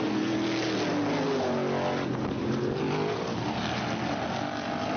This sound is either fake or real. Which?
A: real